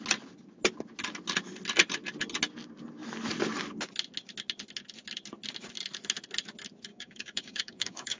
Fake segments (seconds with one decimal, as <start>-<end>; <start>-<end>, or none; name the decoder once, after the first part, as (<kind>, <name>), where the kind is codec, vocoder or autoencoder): 6.9-8.2 (codec, DAC)